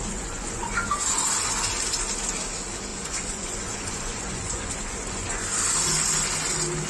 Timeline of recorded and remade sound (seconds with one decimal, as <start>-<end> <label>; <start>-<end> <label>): 0.0-0.9 remade; 0.9-2.9 recorded; 2.9-5.4 remade; 5.4-6.9 recorded